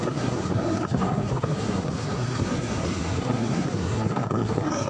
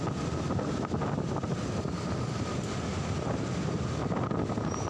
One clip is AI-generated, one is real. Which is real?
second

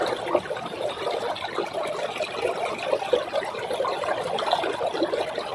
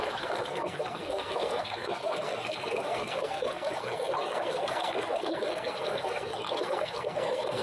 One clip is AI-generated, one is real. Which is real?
first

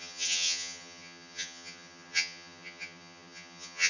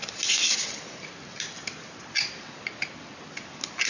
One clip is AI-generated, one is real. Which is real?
second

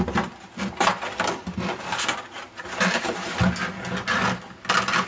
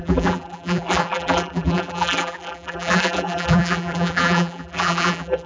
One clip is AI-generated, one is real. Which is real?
first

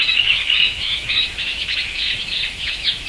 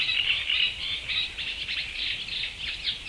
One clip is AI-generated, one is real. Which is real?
second